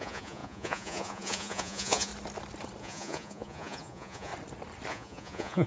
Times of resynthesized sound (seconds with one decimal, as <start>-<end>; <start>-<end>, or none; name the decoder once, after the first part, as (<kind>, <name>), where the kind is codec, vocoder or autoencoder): 0.0-2.1 (vocoder, Vocos); 2.8-4.3; 4.9-5.7